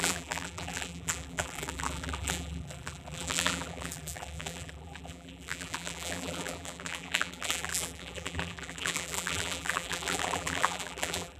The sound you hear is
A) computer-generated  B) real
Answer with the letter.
A